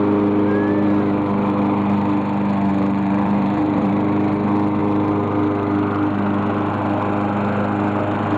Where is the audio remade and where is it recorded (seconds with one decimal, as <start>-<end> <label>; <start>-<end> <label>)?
0.0-2.7 recorded; 2.7-3.9 remade; 3.9-8.4 recorded